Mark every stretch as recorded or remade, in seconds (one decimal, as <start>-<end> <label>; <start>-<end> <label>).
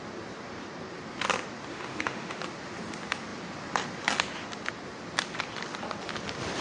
0.0-1.7 recorded; 1.7-2.4 remade; 2.4-6.6 recorded